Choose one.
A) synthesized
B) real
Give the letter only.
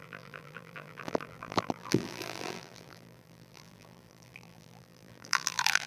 A